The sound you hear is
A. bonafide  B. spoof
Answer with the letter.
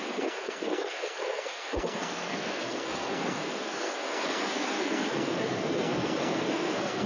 B